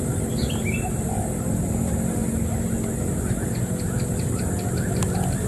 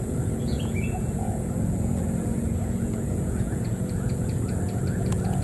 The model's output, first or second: second